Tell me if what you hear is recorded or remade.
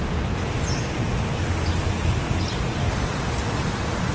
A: recorded